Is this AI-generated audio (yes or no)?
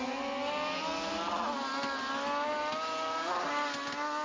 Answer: no